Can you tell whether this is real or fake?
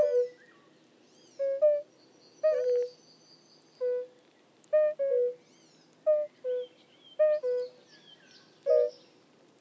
real